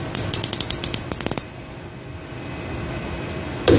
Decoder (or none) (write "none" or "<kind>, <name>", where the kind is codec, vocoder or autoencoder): vocoder, BigVGAN v2